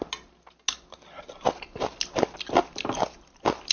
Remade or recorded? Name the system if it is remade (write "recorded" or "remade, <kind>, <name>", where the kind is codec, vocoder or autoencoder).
recorded